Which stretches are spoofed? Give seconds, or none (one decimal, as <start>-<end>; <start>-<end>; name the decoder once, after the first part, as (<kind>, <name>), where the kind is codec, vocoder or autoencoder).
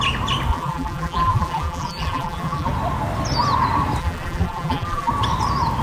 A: 0.5-2.7 (vocoder, BigVGAN v2); 4.0-5.1